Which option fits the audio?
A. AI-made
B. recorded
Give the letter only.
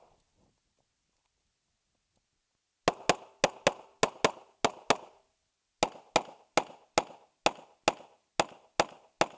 B